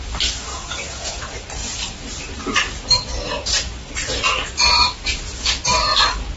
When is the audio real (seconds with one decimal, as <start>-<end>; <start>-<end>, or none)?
0.0-0.5; 1.1-6.4